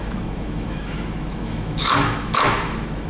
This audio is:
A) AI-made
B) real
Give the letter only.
A